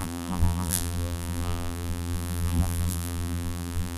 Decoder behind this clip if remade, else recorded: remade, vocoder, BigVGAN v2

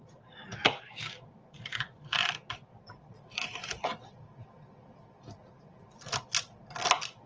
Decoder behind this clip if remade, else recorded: recorded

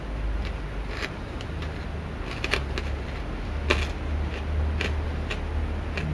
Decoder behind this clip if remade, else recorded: recorded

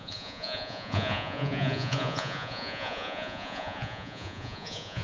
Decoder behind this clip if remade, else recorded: remade, vocoder, Vocos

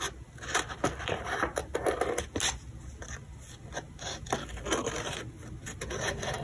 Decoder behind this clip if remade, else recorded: recorded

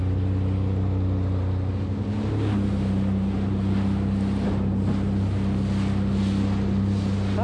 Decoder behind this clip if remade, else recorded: recorded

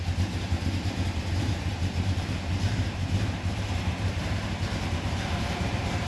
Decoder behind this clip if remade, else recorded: remade, vocoder, BigVGAN v2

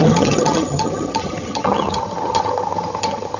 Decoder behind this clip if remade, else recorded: remade, vocoder, HiFi-GAN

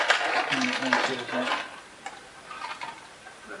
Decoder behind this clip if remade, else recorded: remade, vocoder, BigVGAN v2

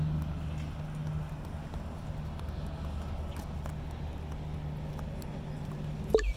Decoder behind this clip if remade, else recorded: recorded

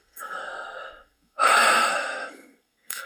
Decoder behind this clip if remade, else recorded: remade, codec, SNAC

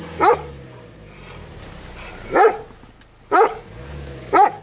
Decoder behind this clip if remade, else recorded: recorded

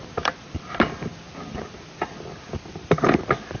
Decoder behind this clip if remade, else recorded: recorded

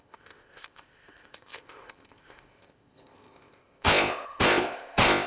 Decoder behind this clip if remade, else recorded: remade, codec, ZipCodec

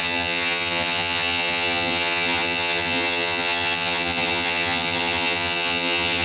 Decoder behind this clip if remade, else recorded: remade, vocoder, HiFi-GAN